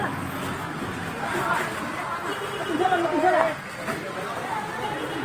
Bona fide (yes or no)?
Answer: yes